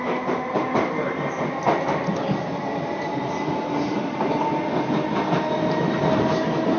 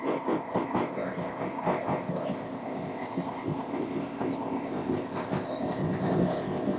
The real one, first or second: first